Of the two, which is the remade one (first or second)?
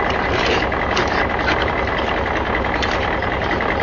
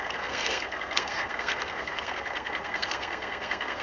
second